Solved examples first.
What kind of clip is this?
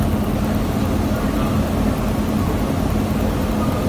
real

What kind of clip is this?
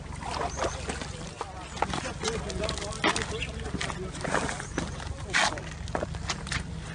real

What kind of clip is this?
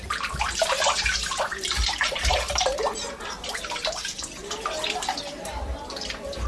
fake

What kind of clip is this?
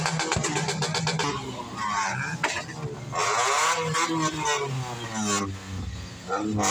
real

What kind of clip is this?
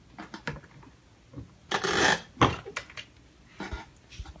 real